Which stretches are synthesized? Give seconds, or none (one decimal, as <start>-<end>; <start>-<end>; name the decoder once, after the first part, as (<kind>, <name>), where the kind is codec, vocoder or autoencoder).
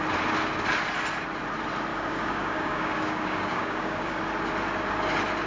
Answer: 1.9-4.2 (codec, DAC)